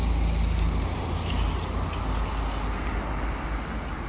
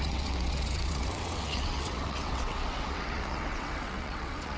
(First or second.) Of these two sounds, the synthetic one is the second